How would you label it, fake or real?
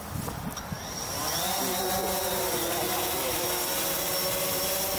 real